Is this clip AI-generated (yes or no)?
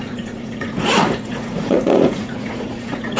yes